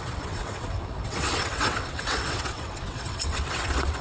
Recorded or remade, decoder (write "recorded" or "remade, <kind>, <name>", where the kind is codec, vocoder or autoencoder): remade, vocoder, WaveNeXt